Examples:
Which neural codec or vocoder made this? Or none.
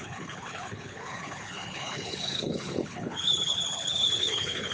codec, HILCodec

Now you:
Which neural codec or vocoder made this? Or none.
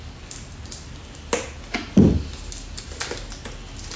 none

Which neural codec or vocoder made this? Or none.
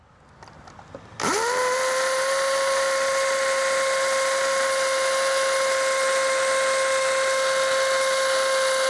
none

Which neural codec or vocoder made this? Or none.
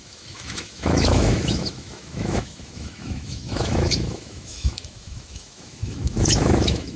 autoencoder, DAC-VAE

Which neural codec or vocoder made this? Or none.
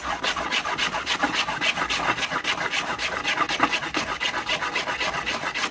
none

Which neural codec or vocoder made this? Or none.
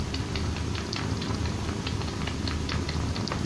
none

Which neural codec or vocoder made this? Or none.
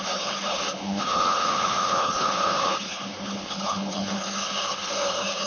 codec, HILCodec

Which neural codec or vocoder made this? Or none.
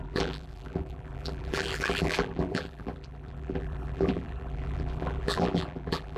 vocoder, BigVGAN v2